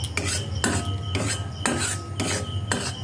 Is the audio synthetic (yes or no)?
no